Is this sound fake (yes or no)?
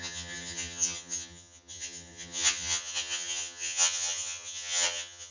yes